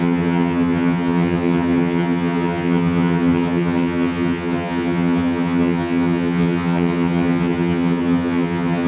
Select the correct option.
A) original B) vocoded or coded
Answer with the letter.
B